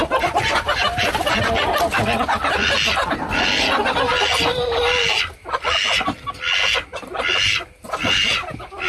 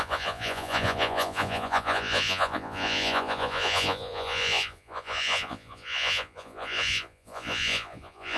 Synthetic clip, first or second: second